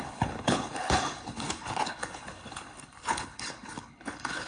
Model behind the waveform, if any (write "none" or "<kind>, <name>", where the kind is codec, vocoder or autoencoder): codec, HILCodec